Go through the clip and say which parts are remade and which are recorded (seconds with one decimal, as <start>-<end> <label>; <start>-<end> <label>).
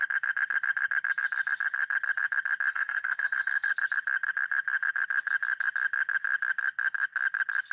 0.0-2.7 recorded; 2.7-3.7 remade; 3.7-7.7 recorded